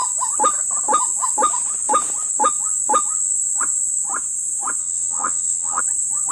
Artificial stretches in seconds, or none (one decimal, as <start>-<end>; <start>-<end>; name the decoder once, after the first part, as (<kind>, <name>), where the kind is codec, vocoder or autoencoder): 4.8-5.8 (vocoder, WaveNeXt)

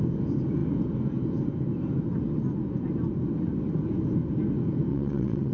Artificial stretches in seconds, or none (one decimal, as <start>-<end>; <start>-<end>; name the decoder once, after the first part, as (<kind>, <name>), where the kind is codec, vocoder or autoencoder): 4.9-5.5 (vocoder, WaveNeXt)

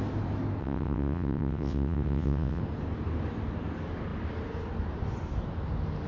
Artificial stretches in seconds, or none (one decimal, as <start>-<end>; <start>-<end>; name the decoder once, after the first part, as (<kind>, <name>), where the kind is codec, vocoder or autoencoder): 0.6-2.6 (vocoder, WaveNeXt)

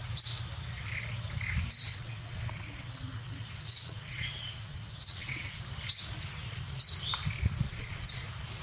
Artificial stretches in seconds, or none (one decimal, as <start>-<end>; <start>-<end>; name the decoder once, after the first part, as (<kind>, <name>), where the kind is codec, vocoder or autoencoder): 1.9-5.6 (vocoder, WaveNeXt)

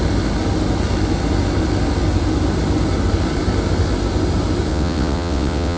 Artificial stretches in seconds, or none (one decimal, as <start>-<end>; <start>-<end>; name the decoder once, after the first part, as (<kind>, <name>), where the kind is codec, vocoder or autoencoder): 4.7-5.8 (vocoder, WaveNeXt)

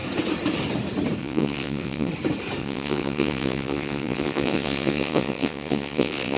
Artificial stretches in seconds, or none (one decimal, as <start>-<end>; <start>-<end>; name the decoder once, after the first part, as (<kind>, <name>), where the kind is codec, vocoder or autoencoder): 1.2-2.1 (vocoder, WaveNeXt); 2.6-6.4